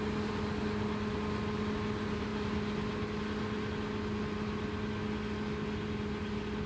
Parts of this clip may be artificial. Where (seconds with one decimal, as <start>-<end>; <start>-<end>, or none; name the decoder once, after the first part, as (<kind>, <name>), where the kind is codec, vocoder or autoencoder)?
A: none